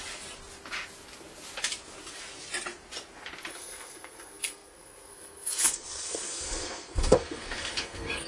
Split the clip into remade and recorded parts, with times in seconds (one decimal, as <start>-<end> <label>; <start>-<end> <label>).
0.0-3.5 recorded; 3.5-8.3 remade